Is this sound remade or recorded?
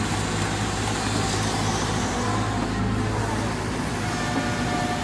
recorded